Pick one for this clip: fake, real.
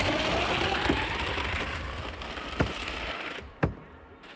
real